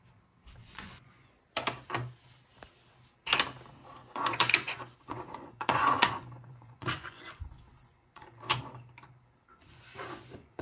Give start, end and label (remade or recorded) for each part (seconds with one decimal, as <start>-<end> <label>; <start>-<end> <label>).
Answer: 0.0-0.6 recorded; 0.6-1.4 remade; 1.4-4.0 recorded; 4.0-8.6 remade; 8.6-9.5 recorded; 9.5-10.6 remade